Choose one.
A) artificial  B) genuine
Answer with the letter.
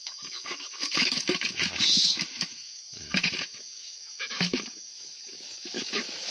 A